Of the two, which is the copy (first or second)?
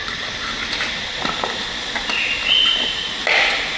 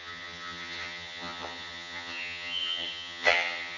second